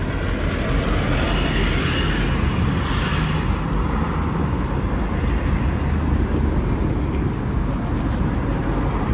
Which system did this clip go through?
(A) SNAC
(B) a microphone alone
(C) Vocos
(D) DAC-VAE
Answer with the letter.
B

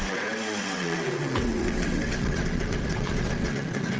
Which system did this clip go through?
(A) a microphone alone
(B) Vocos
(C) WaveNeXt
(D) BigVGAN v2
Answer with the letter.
C